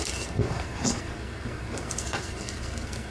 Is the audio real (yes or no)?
no